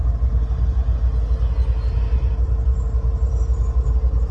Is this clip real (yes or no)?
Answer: yes